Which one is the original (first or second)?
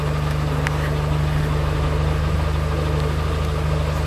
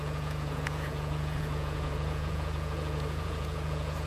first